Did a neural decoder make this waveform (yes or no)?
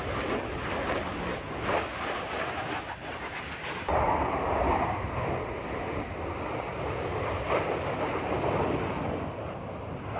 no